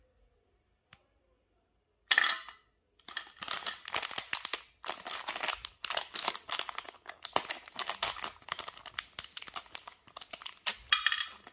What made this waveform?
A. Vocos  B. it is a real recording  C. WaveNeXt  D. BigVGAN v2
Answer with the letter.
B